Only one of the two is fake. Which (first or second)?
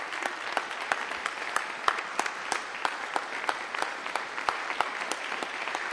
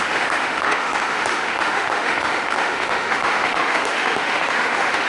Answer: second